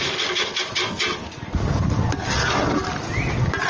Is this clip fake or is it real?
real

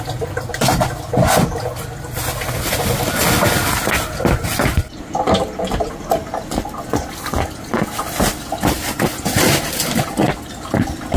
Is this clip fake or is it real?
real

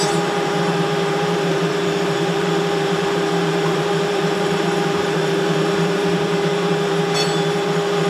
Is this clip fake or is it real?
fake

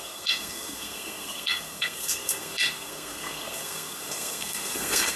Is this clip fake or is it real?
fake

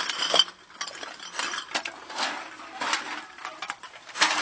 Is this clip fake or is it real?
real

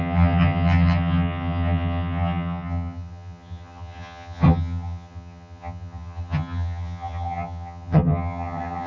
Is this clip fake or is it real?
fake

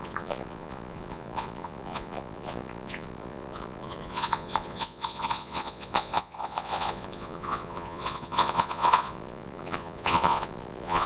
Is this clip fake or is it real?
fake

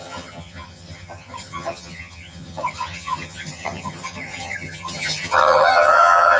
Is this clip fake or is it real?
fake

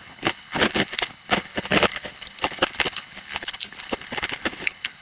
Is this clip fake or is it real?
fake